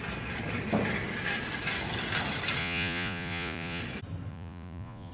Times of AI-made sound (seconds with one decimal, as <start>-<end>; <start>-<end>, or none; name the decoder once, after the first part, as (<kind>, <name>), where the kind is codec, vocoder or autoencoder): 2.6-3.8 (vocoder, Vocos); 4.3-5.1